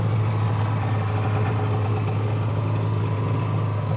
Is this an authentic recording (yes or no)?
yes